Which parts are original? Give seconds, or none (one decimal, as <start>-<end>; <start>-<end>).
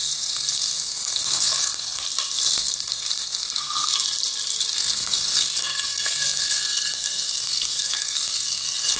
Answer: 2.0-2.6; 3.9-4.7